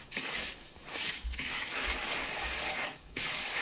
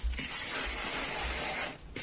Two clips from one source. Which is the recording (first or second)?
second